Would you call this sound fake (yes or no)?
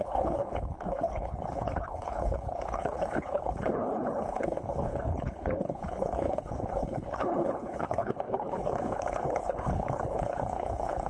yes